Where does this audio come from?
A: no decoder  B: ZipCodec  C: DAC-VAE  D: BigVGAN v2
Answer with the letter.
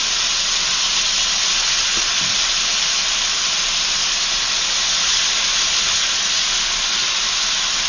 A